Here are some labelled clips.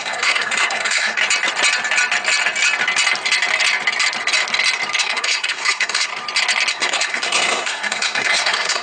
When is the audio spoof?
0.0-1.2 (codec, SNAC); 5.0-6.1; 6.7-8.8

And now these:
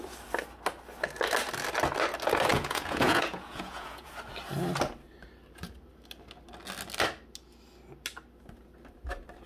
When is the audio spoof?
2.5-4.1 (vocoder, Vocos)

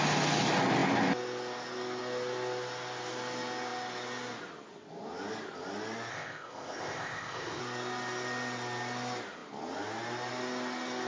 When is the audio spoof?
6.1-7.6 (codec, ZipCodec)

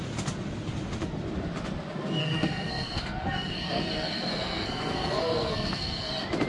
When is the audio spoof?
2.2-6.1 (codec, SNAC)

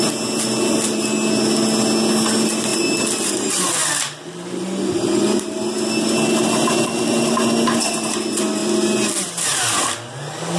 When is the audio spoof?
none

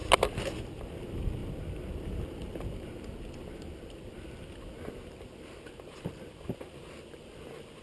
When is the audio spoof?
none

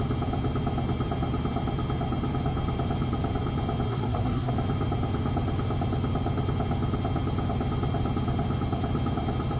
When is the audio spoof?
3.9-4.5 (codec, SNAC)

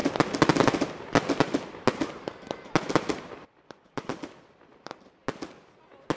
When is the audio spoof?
3.3-5.2 (vocoder, BigVGAN v2)